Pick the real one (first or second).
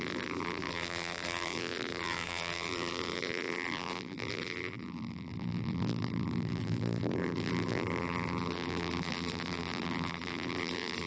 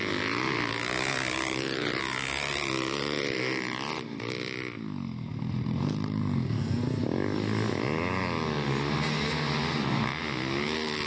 second